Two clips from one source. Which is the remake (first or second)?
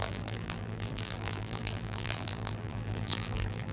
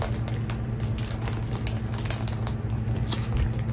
first